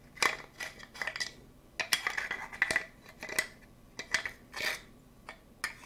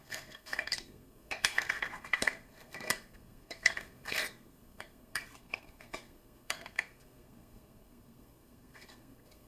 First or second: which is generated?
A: second